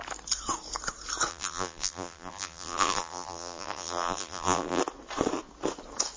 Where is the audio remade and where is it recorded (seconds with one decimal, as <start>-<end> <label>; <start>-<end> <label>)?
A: 0.0-1.3 recorded; 1.3-4.8 remade; 4.8-6.2 recorded